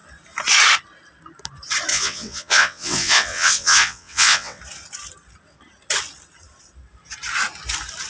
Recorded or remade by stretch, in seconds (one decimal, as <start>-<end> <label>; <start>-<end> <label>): 0.0-1.9 recorded; 1.9-4.6 remade; 4.6-8.1 recorded